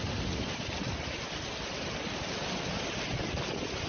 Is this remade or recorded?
recorded